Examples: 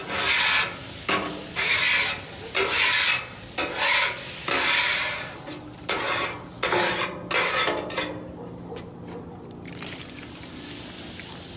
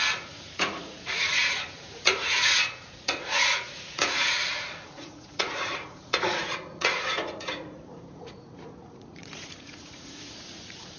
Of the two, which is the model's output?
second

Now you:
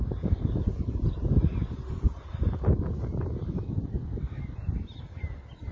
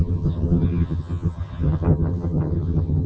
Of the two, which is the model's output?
second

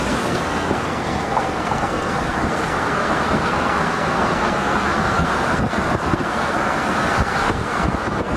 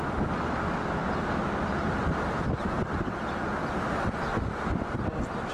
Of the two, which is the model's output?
first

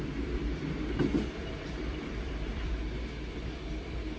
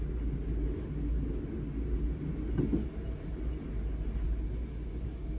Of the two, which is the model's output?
first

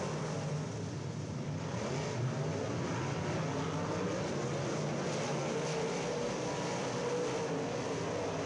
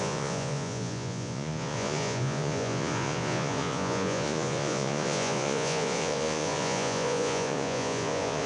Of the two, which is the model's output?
second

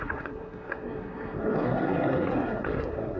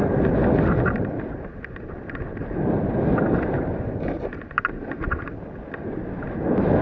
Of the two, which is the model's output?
first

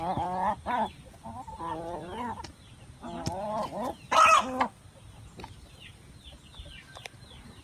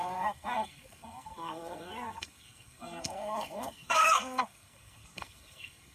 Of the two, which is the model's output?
second